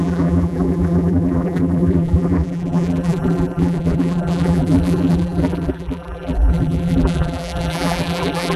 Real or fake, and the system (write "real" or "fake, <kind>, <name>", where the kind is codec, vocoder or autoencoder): fake, vocoder, BigVGAN v2